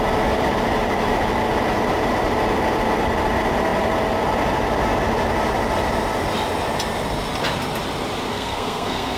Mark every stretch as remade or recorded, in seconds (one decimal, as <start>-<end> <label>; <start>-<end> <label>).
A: 0.0-8.3 recorded; 8.3-9.2 remade